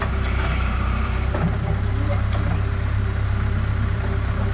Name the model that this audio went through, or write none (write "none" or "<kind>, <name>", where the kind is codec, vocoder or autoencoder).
vocoder, BigVGAN v2